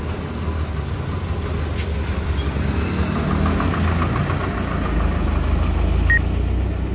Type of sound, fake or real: real